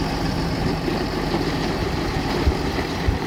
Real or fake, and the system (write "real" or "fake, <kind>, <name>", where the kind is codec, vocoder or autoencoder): fake, vocoder, BigVGAN v2